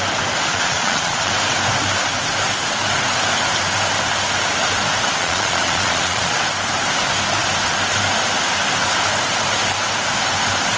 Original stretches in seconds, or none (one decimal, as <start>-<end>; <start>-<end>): 0.0-0.5; 1.3-5.2; 6.4-10.8